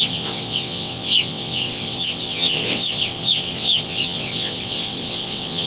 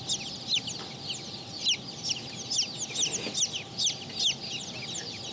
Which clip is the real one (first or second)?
second